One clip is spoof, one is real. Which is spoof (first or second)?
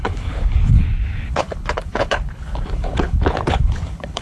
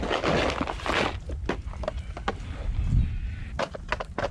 first